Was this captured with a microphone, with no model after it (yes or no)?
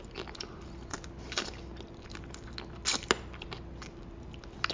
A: yes